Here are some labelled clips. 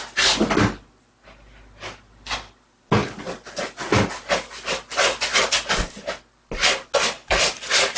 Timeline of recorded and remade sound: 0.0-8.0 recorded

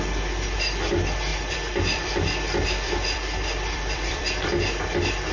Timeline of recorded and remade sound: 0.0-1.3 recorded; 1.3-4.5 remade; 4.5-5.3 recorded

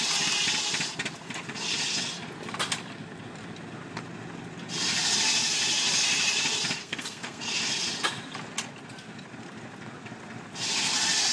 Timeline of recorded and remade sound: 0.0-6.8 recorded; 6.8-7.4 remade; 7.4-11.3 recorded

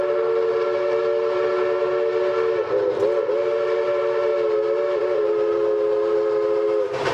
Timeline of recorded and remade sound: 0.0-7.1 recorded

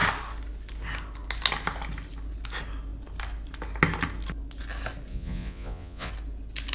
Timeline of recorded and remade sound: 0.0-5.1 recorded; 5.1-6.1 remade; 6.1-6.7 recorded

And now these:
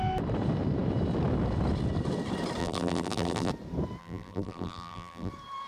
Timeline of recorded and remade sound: 0.0-2.6 recorded; 2.6-3.5 remade; 3.5-4.0 recorded; 4.0-5.3 remade; 5.3-5.7 recorded

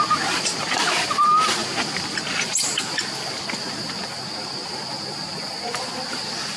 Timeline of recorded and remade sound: 0.0-6.6 recorded

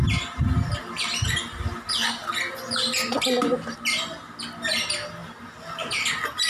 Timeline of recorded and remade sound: 0.0-6.5 recorded